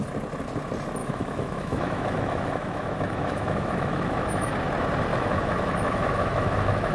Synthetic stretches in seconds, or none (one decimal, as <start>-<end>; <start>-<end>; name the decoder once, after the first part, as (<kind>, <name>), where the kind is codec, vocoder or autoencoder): 1.0-4.5 (autoencoder, DAC-VAE); 5.1-6.9